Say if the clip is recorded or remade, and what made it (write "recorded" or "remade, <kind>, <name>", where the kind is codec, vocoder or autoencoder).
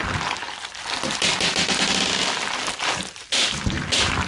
recorded